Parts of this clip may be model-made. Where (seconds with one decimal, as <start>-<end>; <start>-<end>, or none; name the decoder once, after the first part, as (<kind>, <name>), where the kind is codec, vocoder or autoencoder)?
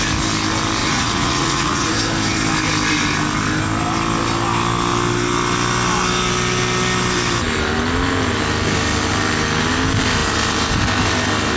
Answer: 0.8-1.9 (vocoder, Vocos)